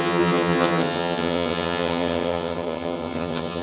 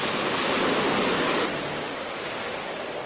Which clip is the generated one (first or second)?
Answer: first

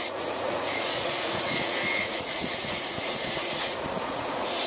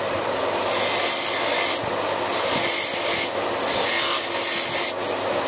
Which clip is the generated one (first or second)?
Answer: first